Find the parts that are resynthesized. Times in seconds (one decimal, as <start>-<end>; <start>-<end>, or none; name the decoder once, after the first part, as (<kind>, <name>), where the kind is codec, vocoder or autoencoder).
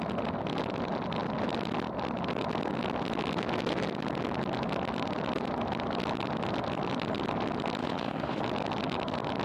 7.8-8.4 (autoencoder, DAC-VAE)